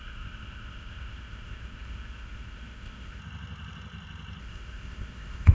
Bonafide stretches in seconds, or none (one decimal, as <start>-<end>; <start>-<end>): 3.2-4.4